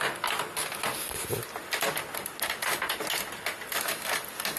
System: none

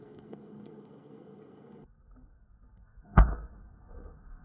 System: codec, SNAC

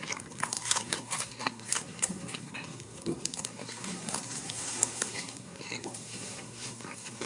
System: codec, SNAC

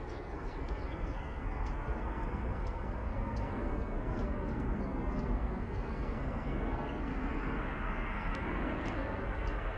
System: codec, SNAC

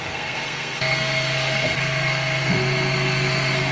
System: codec, SNAC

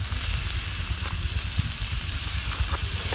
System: none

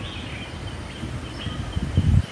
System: none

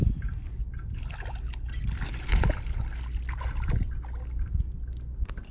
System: none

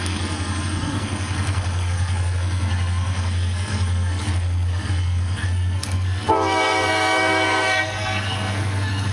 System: codec, SNAC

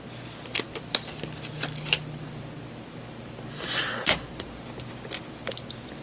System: none